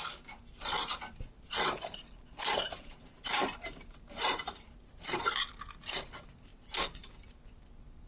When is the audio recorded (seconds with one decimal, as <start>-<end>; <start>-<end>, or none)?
0.0-0.8; 5.3-6.5; 7.1-8.1